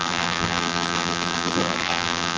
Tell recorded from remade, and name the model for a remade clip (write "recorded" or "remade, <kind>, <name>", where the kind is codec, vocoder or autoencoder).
remade, vocoder, BigVGAN v2